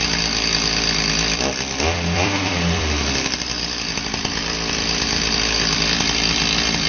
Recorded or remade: remade